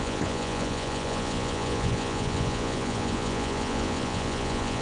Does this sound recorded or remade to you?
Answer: remade